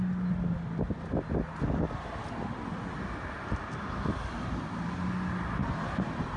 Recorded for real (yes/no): yes